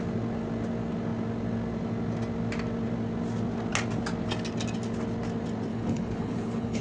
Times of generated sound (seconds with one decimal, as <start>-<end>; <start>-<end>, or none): 5.7-6.8